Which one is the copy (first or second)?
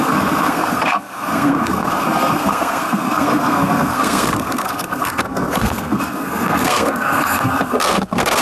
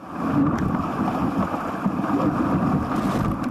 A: first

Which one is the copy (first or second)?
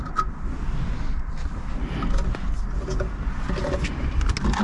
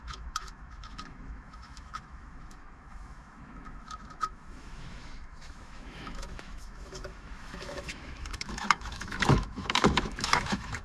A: second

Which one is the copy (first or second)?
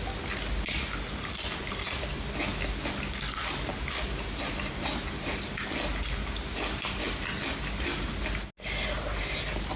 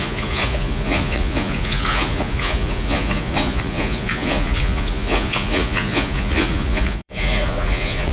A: second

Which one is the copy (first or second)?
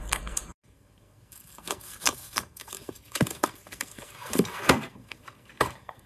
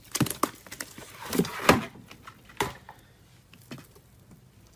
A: first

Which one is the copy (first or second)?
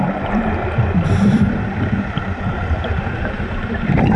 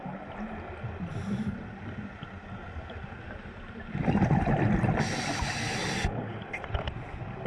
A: first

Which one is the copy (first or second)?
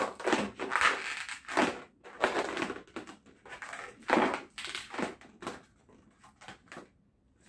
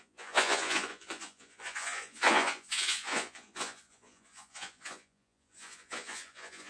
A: second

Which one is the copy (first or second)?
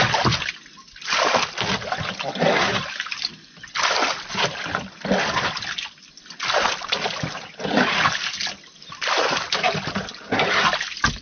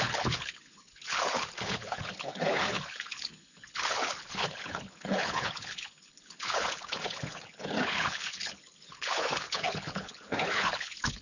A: second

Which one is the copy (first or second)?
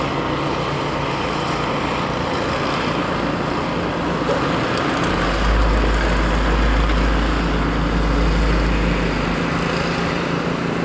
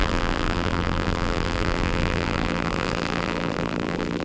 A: second